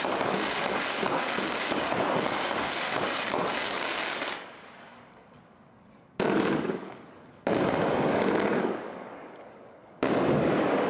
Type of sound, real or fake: fake